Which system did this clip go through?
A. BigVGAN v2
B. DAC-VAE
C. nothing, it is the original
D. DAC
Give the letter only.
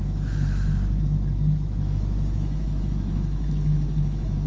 B